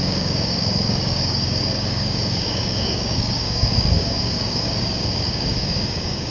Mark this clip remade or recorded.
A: remade